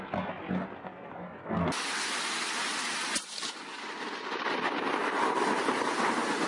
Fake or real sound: real